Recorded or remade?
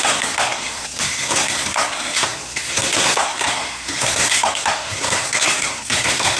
remade